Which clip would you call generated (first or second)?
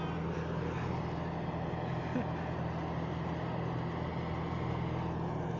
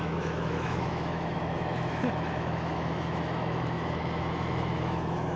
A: second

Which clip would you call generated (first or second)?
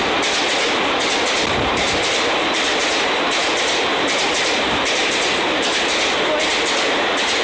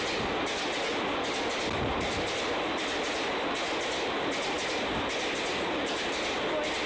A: first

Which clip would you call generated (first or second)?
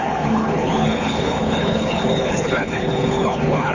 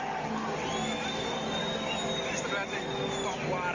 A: first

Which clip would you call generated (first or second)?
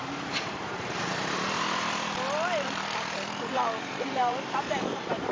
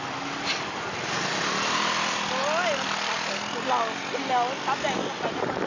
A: first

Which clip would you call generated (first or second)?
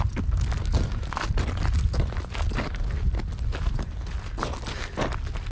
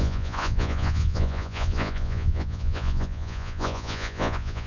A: second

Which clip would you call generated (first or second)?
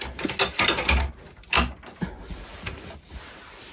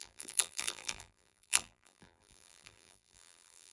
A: second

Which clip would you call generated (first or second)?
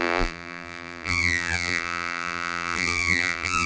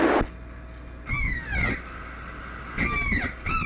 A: first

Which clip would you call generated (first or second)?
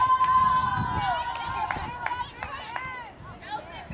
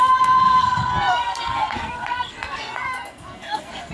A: second